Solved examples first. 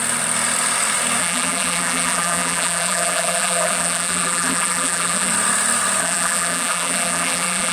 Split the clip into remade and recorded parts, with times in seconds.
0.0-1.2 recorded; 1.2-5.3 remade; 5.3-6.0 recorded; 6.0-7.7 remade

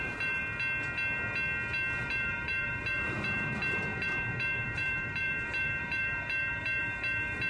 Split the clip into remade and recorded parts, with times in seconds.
0.0-0.4 remade; 0.4-2.0 recorded; 2.0-7.5 remade

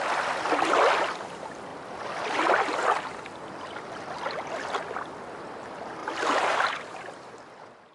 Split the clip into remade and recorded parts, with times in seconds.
0.0-6.0 recorded; 6.0-6.7 remade; 6.7-7.9 recorded

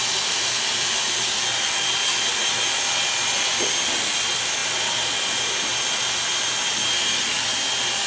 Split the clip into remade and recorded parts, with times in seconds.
0.0-8.1 recorded

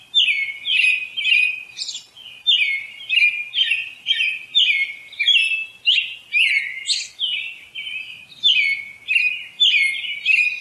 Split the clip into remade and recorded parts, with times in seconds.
0.0-10.6 recorded